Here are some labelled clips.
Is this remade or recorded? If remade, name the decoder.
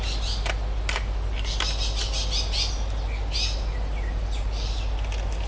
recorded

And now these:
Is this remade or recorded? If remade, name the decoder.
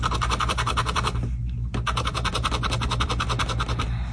recorded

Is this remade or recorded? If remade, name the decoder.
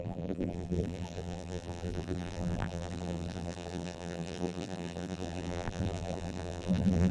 remade, vocoder, BigVGAN v2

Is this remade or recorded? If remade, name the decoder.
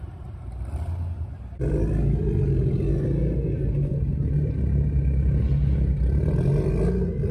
recorded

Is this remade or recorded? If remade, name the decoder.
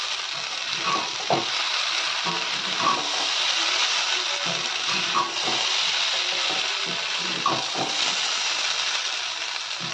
remade, vocoder, BigVGAN v2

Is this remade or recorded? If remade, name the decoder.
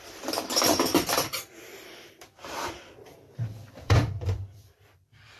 remade, vocoder, BigVGAN v2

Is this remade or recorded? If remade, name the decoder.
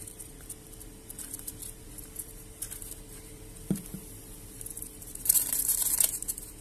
remade, vocoder, BigVGAN v2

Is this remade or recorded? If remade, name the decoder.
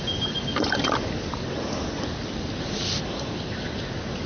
recorded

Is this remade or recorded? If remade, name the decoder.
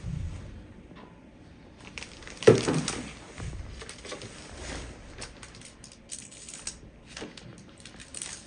remade, vocoder, BigVGAN v2